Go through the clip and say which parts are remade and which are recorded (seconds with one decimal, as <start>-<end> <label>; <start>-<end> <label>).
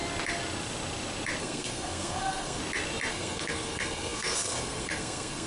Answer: 0.0-1.4 recorded; 1.4-2.6 remade; 2.6-3.1 recorded; 3.1-5.5 remade